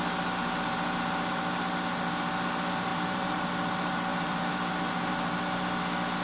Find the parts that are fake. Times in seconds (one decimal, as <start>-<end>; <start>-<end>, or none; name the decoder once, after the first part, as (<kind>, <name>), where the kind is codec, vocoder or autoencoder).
2.9-3.5 (vocoder, BigVGAN v2); 4.1-5.1